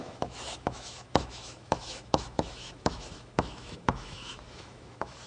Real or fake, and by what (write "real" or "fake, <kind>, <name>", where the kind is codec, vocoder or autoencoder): fake, autoencoder, DAC-VAE